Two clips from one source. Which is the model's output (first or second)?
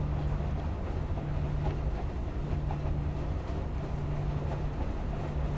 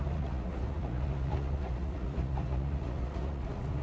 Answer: second